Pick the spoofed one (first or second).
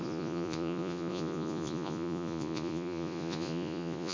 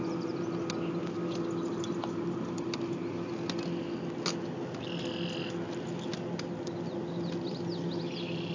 first